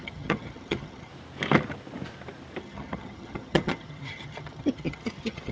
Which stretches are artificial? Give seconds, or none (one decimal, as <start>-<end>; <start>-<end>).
0.0-1.1; 2.6-5.5